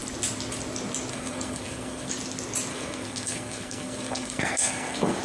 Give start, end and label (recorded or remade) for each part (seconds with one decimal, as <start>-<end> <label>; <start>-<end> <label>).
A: 0.0-1.1 recorded; 1.1-2.1 remade; 2.1-2.7 recorded; 2.7-5.2 remade